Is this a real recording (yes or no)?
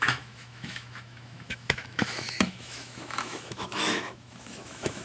no